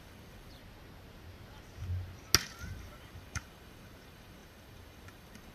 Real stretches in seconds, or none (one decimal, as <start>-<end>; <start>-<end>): 0.6-2.4